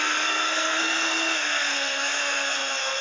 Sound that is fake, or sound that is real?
fake